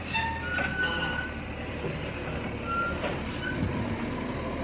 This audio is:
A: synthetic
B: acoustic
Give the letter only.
B